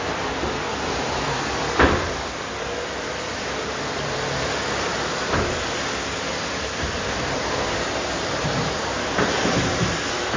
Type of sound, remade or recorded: remade